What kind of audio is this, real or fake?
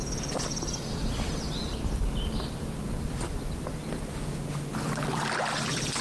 real